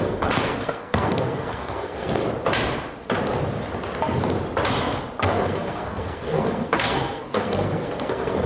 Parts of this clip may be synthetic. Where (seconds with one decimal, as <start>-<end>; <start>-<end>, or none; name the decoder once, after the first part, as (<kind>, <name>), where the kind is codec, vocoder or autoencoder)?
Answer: 0.0-2.2 (codec, SNAC); 5.2-8.5

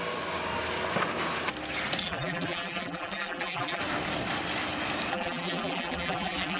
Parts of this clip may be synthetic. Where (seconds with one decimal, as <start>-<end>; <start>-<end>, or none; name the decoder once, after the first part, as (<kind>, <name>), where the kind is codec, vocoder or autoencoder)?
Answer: 2.0-3.8 (vocoder, BigVGAN v2); 5.1-6.6

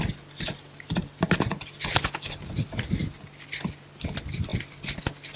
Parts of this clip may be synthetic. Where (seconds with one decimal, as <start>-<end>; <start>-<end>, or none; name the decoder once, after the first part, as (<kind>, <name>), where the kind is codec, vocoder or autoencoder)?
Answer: 4.5-5.0 (vocoder, BigVGAN v2)

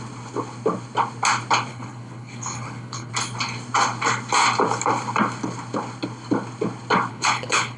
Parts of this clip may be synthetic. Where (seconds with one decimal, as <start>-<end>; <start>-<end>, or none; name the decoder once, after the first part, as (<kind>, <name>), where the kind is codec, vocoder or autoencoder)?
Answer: 1.7-3.1 (codec, HILCodec); 7.1-7.8

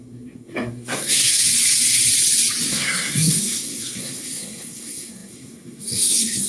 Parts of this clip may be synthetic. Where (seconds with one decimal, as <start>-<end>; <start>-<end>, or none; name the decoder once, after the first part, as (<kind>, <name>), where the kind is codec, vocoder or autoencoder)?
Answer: 0.0-1.4 (codec, SNAC); 2.7-6.5